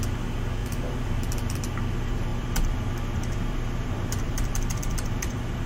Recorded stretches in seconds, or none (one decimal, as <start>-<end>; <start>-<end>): 0.0-0.6; 1.6-2.3